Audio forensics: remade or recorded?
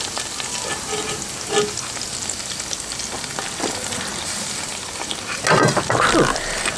recorded